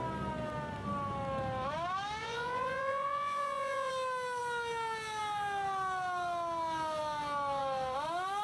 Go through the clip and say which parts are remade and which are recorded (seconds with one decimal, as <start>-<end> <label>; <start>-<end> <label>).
0.0-2.2 recorded; 2.2-3.9 remade; 3.9-8.4 recorded

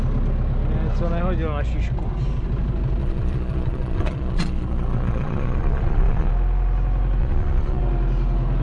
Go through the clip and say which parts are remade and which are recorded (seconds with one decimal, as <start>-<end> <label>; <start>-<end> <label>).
0.0-3.0 recorded; 3.0-6.3 remade; 6.3-7.2 recorded; 7.2-7.8 remade; 7.8-8.6 recorded